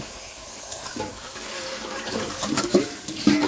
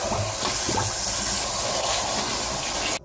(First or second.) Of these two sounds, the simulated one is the first